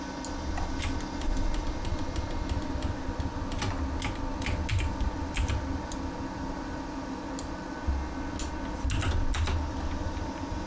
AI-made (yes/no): no